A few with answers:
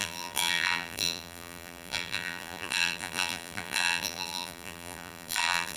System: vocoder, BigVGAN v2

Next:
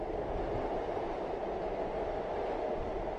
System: none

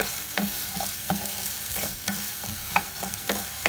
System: codec, SNAC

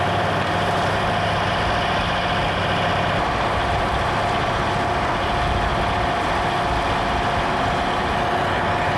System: none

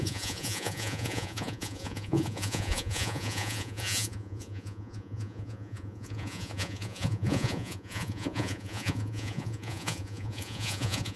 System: vocoder, Vocos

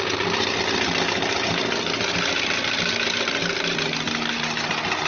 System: none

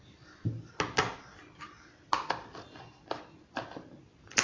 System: none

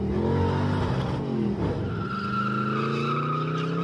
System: none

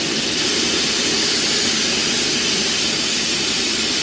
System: none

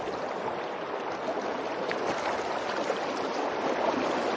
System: none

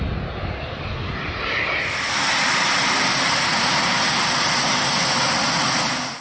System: none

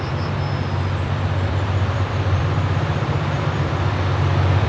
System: vocoder, BigVGAN v2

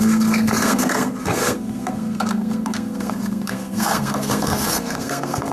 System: codec, SNAC